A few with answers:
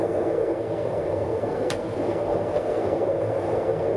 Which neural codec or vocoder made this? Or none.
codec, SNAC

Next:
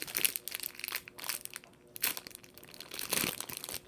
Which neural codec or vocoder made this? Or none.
none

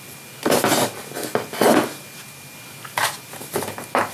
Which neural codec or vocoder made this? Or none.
none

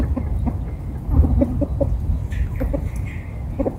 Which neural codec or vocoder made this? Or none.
none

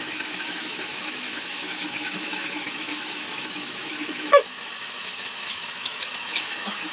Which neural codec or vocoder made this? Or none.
autoencoder, DAC-VAE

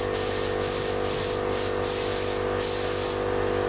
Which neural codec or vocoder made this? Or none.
none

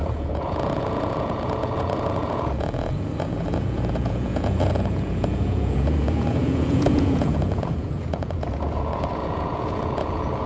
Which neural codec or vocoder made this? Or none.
vocoder, Vocos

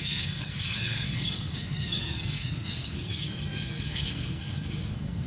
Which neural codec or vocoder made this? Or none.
codec, SNAC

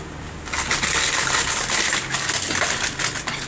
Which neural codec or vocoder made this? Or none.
none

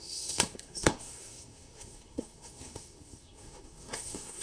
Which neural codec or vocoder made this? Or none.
codec, SNAC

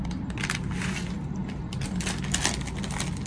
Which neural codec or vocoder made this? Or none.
none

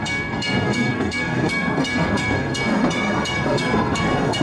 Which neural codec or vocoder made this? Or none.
codec, SNAC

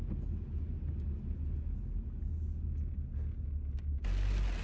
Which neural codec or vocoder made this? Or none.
none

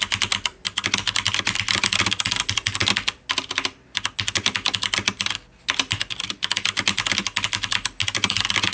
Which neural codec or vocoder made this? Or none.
none